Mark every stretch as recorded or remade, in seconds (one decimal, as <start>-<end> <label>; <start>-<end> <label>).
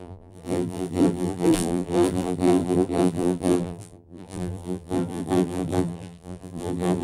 0.0-7.0 remade